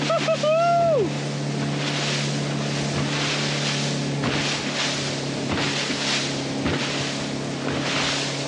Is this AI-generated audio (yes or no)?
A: no